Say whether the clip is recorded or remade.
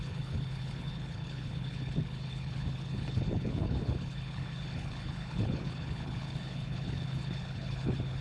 remade